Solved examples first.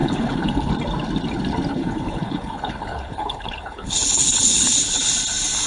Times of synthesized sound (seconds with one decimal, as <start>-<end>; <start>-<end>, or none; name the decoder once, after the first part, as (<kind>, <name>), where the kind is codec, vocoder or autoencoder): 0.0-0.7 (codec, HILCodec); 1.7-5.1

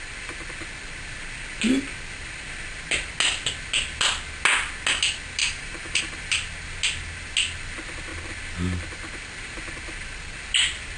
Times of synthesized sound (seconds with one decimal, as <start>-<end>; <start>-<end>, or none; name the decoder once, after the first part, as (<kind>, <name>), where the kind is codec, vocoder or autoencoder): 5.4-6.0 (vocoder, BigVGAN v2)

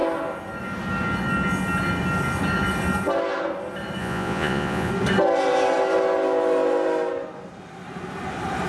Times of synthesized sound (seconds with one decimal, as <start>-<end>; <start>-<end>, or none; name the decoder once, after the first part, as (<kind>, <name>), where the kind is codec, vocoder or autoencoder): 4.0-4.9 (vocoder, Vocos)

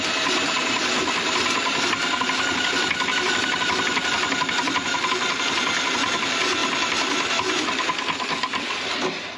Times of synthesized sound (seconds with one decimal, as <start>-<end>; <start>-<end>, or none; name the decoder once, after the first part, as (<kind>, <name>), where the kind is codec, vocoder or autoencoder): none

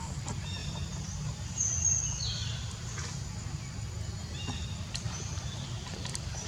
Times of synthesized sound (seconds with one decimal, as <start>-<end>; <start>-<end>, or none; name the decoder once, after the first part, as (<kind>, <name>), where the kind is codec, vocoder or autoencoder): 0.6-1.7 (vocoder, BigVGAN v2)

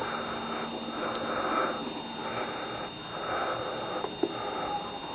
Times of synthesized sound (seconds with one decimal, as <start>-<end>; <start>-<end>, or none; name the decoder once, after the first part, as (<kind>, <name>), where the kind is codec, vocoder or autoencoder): none

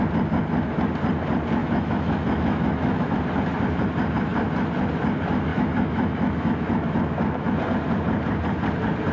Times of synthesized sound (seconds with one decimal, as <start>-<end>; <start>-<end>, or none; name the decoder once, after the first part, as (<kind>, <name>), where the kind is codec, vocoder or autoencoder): 1.6-3.2 (autoencoder, DAC-VAE); 5.5-7.6